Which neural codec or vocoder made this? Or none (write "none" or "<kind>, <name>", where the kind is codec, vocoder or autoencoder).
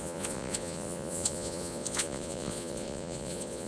vocoder, Vocos